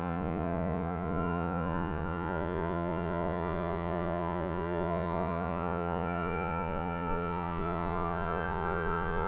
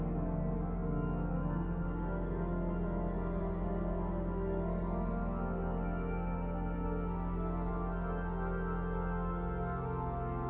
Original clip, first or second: second